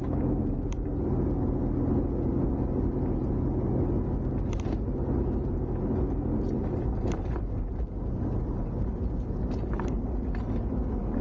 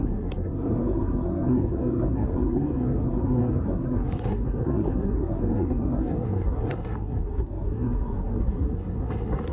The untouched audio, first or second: first